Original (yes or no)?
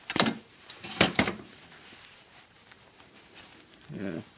no